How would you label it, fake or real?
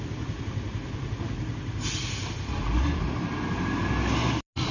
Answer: real